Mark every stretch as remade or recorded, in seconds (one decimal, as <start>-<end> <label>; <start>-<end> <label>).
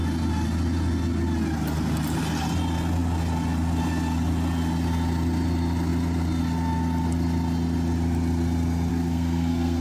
0.0-8.9 recorded; 8.9-9.8 remade